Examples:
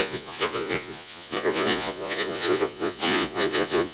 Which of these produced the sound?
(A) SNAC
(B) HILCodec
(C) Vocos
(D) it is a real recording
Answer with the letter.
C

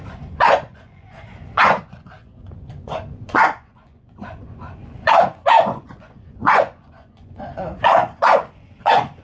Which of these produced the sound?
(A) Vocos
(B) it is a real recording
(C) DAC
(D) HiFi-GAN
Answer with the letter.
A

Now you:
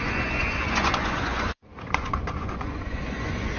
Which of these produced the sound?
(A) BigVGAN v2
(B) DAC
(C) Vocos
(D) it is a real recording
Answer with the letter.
C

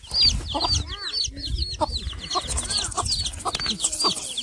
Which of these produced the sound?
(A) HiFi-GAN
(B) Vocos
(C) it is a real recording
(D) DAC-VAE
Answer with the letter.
C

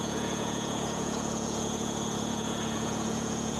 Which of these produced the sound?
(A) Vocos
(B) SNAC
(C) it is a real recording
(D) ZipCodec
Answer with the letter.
A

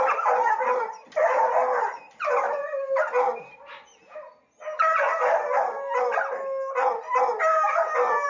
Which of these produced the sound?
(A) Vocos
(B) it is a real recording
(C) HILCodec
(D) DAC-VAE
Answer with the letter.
B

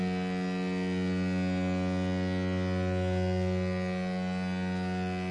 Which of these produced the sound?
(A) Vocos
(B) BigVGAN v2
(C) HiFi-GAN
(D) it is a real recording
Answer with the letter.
D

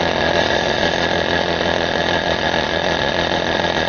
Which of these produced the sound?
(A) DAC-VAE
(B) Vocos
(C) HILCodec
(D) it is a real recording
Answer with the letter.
B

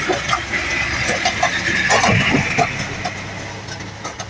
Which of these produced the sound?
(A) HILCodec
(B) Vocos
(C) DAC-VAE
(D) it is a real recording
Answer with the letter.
D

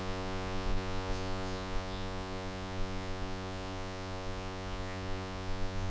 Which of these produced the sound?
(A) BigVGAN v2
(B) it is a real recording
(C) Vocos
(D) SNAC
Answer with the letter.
C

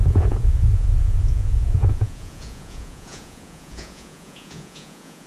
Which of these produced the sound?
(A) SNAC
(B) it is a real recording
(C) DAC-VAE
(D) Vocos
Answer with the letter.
D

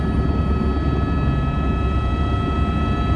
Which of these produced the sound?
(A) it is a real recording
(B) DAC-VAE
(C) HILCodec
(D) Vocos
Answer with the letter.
A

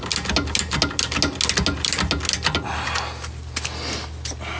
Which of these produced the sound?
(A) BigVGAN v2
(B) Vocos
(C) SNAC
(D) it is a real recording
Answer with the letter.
D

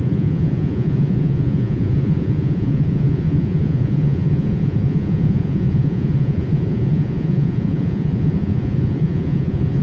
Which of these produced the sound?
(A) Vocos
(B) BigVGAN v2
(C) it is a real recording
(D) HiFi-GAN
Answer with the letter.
A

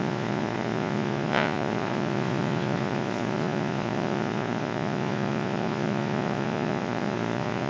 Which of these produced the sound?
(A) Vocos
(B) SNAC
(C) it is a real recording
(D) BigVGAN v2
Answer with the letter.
A